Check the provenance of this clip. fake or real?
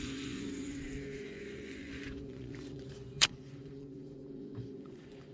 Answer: fake